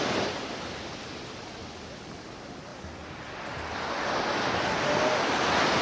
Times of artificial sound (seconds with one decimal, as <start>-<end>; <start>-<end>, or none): none